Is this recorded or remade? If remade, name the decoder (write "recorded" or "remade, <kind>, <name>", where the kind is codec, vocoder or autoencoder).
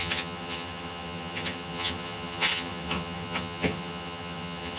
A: remade, vocoder, HiFi-GAN